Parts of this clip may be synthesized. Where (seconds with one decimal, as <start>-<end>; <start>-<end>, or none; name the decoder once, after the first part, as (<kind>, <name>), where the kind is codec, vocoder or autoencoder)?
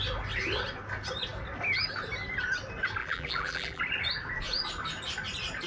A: 3.0-3.8 (vocoder, BigVGAN v2)